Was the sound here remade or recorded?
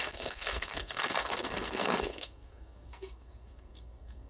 remade